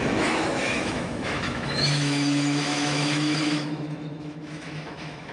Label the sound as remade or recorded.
remade